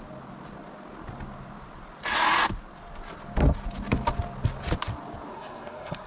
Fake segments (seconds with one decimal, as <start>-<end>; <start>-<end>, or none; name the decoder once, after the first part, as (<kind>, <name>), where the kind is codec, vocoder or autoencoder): 5.3-6.1 (codec, SNAC)